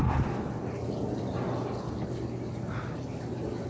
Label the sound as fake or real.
real